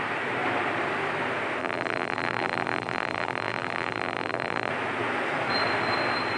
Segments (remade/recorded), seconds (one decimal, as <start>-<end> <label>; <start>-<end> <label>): 0.0-1.6 recorded; 1.6-4.7 remade; 4.7-6.4 recorded